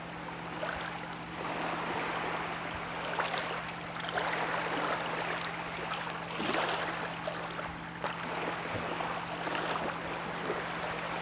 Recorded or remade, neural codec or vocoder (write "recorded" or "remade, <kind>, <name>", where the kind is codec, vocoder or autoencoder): recorded